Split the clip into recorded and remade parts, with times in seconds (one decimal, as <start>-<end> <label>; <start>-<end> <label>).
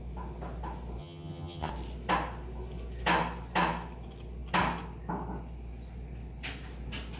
0.0-1.0 recorded; 1.0-1.7 remade; 1.7-7.2 recorded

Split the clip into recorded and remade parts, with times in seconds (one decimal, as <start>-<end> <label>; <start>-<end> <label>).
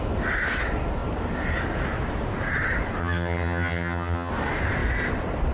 0.0-3.0 recorded; 3.0-4.3 remade; 4.3-5.5 recorded